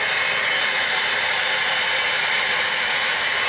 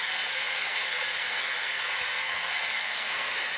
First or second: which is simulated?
second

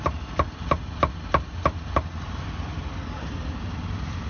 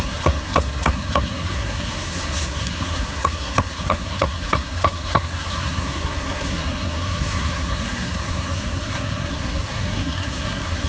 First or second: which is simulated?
second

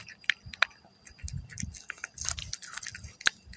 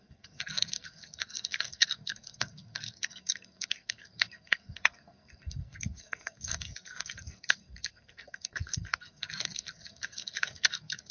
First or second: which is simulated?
second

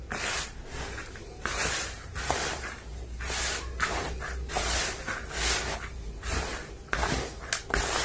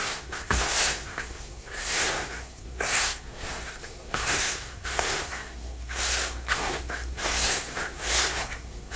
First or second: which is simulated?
second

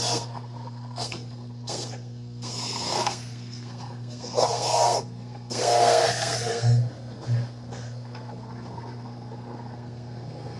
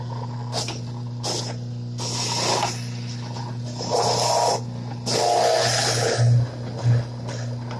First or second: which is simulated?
first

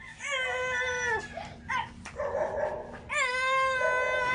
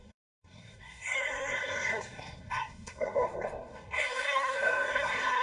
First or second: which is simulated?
second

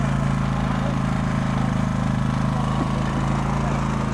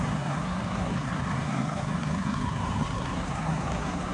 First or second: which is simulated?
second